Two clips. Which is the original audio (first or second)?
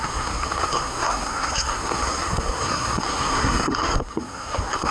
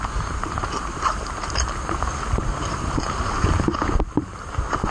second